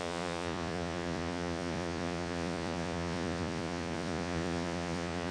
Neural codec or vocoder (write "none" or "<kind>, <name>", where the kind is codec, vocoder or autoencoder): vocoder, Vocos